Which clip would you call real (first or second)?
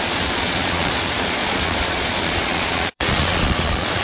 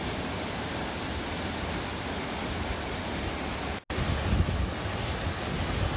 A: second